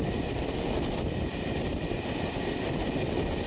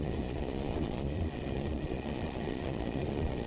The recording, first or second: first